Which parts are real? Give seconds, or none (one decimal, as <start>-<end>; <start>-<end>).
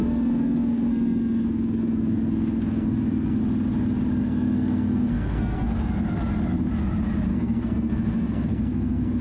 3.4-4.2; 5.9-7.3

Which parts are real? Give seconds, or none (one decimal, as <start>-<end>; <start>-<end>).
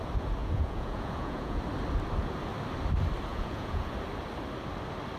0.0-0.4; 1.6-3.3; 3.9-5.2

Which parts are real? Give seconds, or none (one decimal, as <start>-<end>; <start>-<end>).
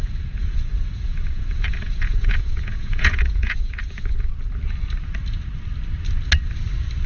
4.3-7.1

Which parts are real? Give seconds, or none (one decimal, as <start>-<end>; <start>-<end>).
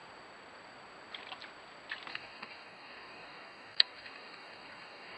0.0-2.1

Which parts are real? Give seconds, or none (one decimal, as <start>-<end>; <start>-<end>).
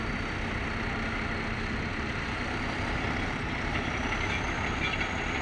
0.0-1.9; 2.6-5.4